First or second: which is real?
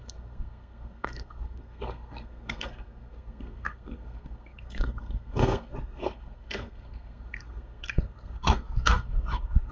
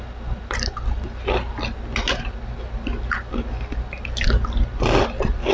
second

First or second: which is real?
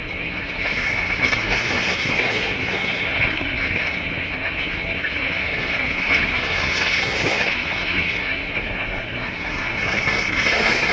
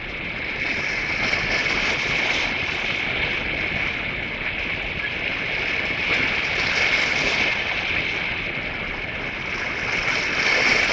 second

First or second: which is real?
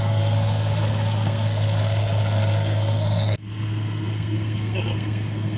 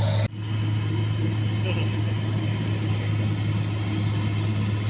second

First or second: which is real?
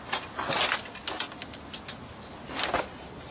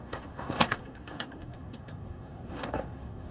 first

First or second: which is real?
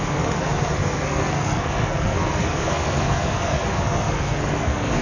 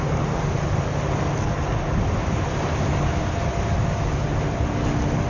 second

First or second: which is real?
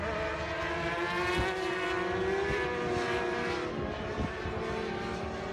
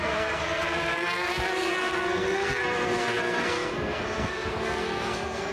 first